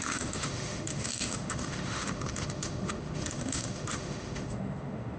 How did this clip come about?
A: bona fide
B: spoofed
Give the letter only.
B